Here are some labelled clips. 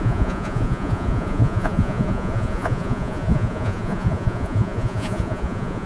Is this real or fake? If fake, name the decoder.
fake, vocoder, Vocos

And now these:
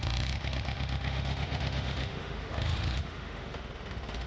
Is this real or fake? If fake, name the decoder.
fake, autoencoder, DAC-VAE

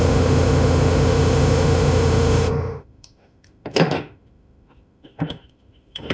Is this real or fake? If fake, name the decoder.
fake, autoencoder, DAC-VAE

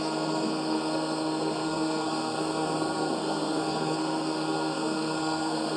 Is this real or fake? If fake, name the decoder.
fake, codec, SNAC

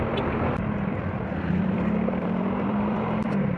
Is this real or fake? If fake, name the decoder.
fake, vocoder, BigVGAN v2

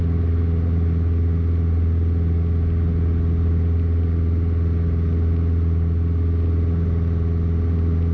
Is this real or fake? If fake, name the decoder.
real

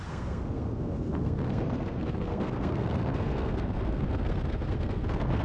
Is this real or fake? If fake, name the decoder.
fake, codec, SNAC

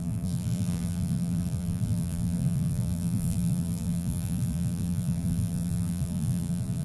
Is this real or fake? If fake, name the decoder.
fake, vocoder, BigVGAN v2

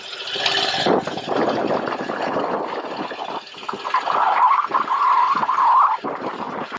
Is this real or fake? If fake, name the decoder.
real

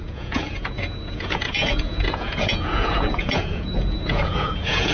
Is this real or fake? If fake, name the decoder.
fake, vocoder, Vocos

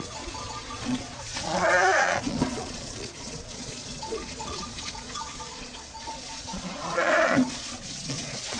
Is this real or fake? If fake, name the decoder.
fake, vocoder, Vocos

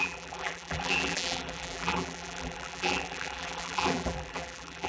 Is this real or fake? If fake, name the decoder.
fake, vocoder, BigVGAN v2